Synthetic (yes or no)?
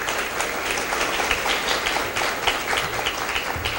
no